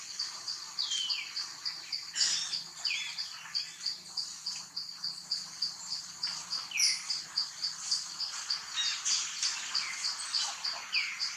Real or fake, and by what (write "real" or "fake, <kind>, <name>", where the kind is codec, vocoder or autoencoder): real